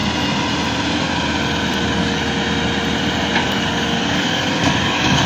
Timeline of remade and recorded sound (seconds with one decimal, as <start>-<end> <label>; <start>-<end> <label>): 0.0-1.7 recorded; 1.7-2.2 remade; 2.2-3.4 recorded; 3.4-5.3 remade